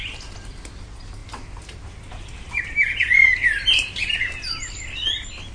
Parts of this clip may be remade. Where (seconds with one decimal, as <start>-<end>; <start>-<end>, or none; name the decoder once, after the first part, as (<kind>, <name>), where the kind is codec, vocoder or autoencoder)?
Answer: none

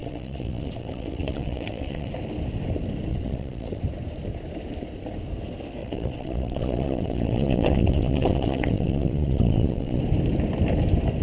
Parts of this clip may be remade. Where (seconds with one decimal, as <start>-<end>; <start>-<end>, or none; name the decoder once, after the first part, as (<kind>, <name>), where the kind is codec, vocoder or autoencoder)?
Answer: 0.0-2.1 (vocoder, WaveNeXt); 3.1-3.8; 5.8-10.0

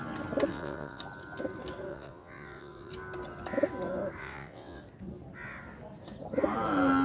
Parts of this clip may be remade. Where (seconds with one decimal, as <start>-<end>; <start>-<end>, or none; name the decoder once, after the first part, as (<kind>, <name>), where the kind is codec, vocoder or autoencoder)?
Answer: 0.5-1.0 (vocoder, WaveNeXt); 1.9-2.9; 4.2-4.8

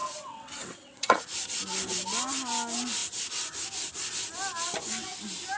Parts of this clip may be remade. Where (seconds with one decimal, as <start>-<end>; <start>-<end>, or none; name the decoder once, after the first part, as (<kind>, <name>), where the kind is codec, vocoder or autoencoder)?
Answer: 0.0-1.2 (vocoder, WaveNeXt)

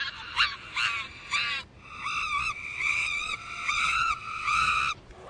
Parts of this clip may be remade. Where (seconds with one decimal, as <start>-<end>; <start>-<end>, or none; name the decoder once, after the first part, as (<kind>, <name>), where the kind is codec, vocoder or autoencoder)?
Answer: 2.5-4.8 (vocoder, WaveNeXt)

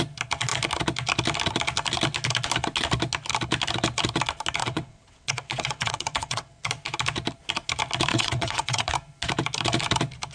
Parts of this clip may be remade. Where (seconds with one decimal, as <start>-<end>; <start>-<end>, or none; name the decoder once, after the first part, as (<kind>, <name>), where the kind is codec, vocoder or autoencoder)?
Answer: 4.6-6.7 (vocoder, WaveNeXt); 8.1-8.9